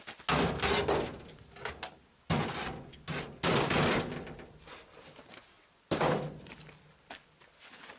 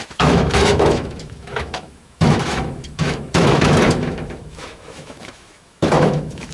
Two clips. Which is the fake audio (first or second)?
second